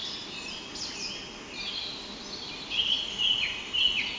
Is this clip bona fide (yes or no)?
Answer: yes